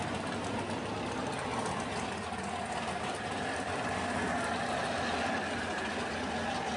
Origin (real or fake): real